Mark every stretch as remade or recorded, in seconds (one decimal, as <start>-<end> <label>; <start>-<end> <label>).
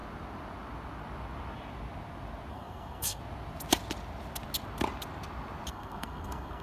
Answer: 0.0-2.5 recorded; 2.5-3.2 remade; 3.2-5.7 recorded; 5.7-6.6 remade